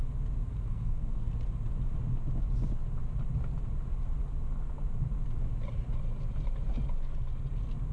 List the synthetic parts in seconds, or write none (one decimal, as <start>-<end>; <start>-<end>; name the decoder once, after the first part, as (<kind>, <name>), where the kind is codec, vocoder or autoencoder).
0.5-1.3 (codec, SNAC)